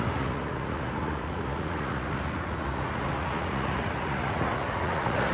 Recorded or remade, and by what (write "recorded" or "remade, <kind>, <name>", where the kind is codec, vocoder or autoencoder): remade, vocoder, Vocos